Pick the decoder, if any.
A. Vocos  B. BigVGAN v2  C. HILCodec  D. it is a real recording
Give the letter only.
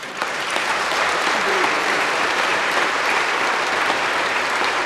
B